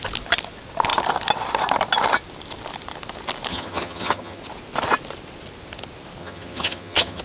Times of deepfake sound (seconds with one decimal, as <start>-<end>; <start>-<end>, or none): 3.5-4.4; 6.2-7.2